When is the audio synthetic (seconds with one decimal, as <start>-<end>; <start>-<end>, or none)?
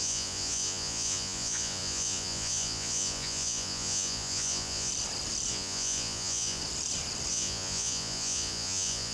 0.0-4.9; 5.5-6.6; 7.3-9.1